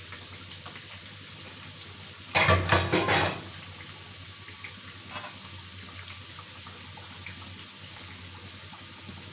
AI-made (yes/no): no